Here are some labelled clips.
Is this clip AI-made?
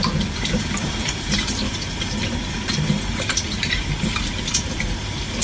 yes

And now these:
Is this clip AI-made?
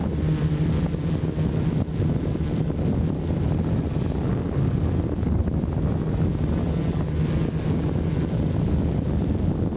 no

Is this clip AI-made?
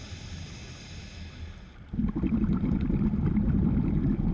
no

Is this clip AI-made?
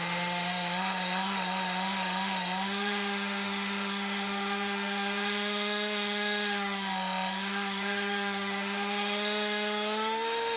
yes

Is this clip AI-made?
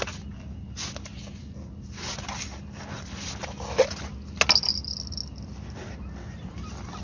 no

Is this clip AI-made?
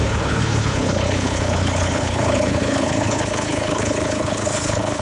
yes